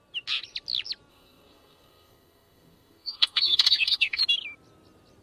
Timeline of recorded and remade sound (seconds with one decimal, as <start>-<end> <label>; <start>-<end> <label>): 0.0-1.1 recorded; 1.1-4.2 remade; 4.2-5.2 recorded